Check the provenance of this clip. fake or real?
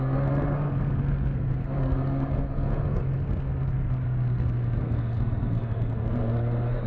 fake